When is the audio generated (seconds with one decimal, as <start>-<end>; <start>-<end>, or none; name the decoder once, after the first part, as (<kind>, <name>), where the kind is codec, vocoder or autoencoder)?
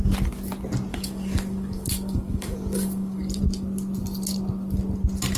0.9-3.4 (codec, DAC)